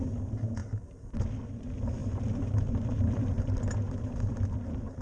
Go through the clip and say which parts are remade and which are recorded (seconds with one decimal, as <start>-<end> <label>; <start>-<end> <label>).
0.0-2.0 recorded; 2.0-4.6 remade; 4.6-5.0 recorded